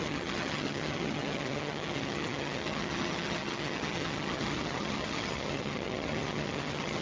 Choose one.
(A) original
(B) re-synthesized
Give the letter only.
B